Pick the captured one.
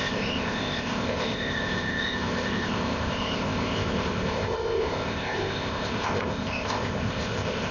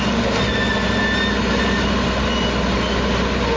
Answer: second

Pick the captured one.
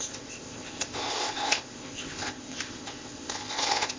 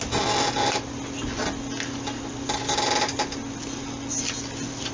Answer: second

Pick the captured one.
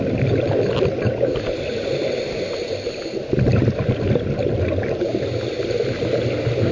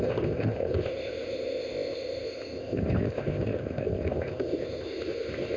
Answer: first